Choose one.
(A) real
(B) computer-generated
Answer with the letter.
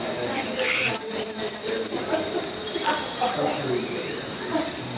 A